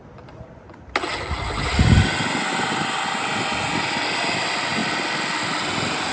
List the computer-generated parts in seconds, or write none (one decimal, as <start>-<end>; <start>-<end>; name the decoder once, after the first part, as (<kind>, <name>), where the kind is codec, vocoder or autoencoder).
none